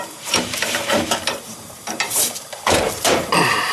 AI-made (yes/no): yes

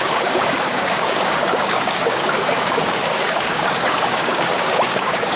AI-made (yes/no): yes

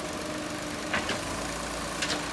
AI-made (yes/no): no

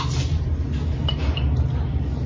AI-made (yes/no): no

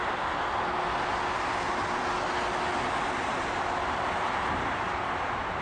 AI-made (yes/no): no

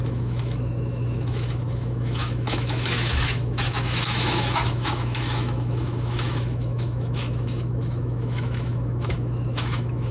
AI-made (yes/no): yes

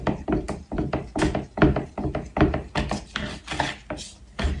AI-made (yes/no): no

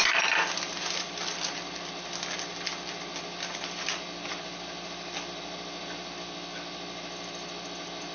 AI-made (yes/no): no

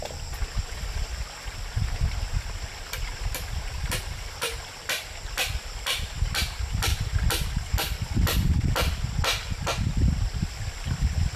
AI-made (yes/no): yes